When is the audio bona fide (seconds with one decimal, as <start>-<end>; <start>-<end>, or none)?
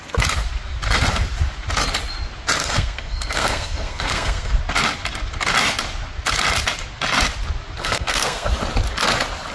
0.0-2.6; 4.6-7.8; 8.5-9.5